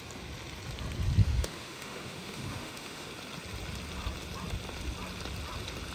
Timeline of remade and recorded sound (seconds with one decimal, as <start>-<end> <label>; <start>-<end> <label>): 0.0-1.2 recorded; 1.2-3.1 remade; 3.1-5.9 recorded

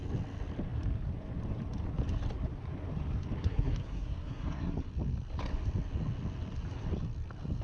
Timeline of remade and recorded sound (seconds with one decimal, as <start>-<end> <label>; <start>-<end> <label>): 0.0-3.4 recorded; 3.4-4.9 remade; 4.9-7.6 recorded

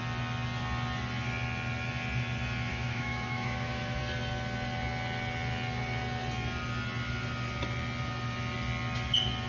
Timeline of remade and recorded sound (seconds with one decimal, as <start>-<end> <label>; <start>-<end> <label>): 0.0-2.7 recorded; 2.7-4.0 remade; 4.0-9.5 recorded

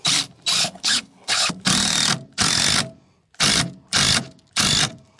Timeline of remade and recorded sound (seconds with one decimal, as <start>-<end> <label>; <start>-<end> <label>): 0.0-0.6 recorded; 0.6-1.5 remade; 1.5-5.2 recorded

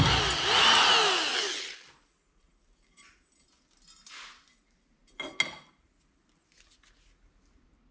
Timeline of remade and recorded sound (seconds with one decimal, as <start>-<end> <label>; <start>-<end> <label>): 0.0-7.9 recorded